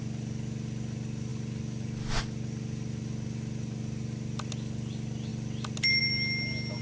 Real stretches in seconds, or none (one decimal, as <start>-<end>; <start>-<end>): 0.0-6.8